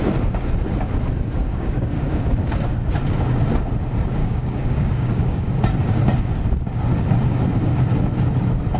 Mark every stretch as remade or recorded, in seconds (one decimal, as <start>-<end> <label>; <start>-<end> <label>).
0.0-1.5 recorded; 1.5-2.6 remade; 2.6-4.2 recorded; 4.2-5.6 remade; 5.6-8.8 recorded